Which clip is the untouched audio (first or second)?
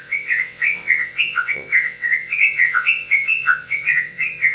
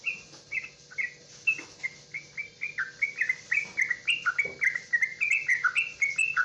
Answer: second